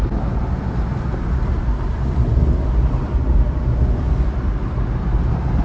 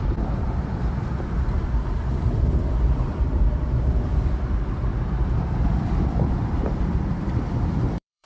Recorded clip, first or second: first